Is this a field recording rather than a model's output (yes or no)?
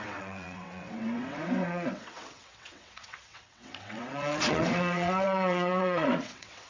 no